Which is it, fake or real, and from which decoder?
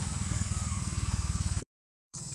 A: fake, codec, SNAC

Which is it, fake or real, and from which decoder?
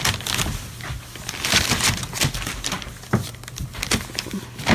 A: real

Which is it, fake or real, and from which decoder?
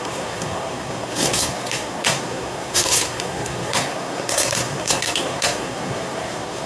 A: fake, codec, SNAC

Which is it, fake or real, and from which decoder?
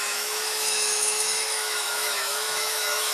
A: fake, autoencoder, DAC-VAE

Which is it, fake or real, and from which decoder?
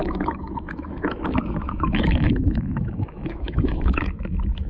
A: fake, autoencoder, DAC-VAE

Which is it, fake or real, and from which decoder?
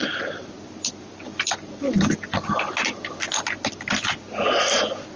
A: real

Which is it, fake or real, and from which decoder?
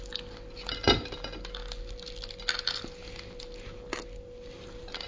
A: real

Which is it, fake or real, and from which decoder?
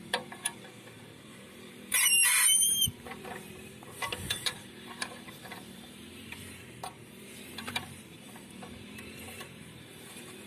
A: fake, vocoder, BigVGAN v2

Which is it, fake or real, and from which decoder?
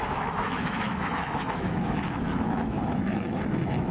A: fake, autoencoder, DAC-VAE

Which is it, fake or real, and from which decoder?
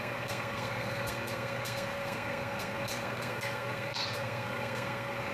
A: fake, codec, SNAC